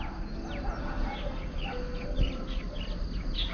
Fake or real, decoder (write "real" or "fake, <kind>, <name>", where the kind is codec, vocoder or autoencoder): real